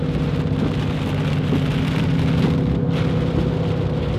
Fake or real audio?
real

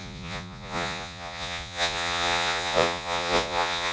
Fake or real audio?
fake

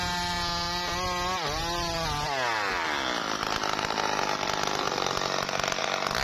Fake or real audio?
real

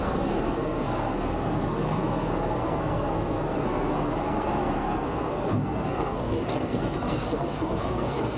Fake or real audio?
fake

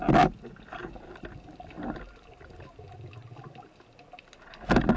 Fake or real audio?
real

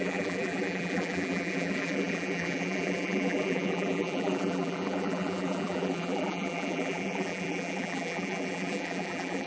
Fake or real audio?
fake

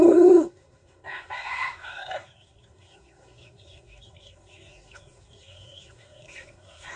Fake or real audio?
fake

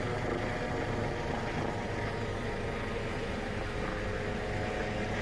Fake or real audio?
real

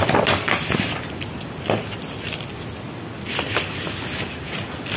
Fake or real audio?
real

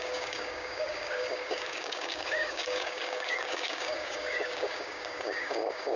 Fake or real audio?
fake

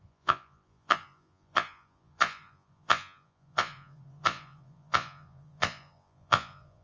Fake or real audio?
fake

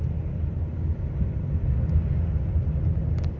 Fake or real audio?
real